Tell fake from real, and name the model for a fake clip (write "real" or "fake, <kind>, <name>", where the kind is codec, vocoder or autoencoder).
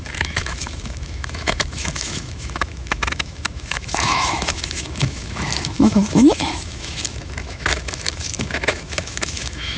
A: fake, autoencoder, DAC-VAE